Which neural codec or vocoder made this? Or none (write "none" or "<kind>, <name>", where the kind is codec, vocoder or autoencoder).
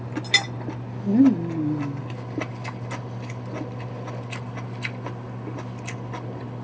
none